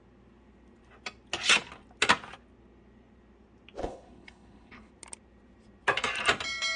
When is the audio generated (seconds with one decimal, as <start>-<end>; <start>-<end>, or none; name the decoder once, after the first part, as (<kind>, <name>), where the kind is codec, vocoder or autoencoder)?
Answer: 3.8-4.9 (codec, HILCodec)